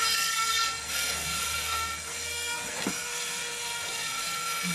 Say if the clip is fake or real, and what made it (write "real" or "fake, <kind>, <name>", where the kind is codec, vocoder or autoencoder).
fake, codec, SNAC